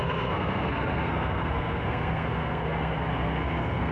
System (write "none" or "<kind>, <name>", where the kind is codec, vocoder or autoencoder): codec, SNAC